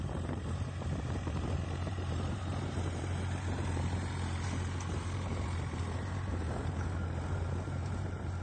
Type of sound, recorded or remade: remade